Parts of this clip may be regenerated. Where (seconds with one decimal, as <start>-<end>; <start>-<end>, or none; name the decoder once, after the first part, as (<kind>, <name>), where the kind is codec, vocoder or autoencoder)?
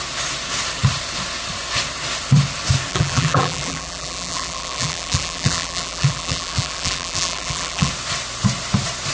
2.9-7.9 (vocoder, BigVGAN v2)